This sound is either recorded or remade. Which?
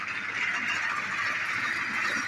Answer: recorded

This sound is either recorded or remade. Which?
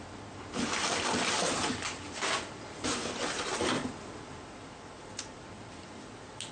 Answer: recorded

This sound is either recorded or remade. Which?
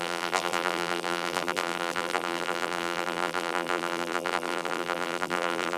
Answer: remade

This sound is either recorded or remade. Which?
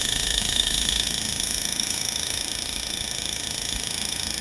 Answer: remade